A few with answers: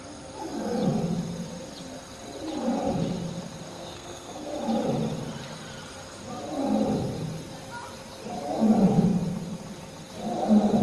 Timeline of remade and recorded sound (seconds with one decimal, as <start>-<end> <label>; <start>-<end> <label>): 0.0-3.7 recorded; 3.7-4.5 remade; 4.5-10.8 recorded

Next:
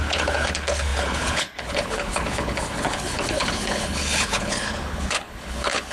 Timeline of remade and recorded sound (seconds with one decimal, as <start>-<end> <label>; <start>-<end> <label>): 0.0-5.9 remade

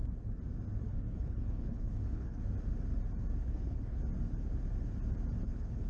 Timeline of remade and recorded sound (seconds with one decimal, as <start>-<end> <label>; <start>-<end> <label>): 0.0-0.8 recorded; 0.8-2.4 remade; 2.4-3.4 recorded; 3.4-4.0 remade; 4.0-5.4 recorded; 5.4-5.9 remade

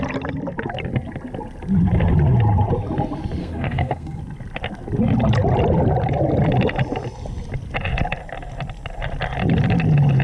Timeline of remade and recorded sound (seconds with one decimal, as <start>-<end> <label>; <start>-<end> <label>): 0.0-3.4 recorded; 3.4-4.2 remade; 4.2-10.2 recorded